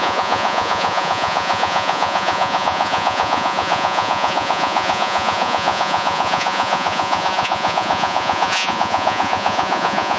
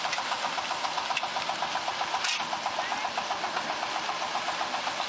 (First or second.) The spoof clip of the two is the first